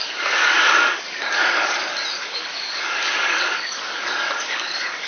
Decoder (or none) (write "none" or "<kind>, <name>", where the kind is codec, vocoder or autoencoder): codec, DAC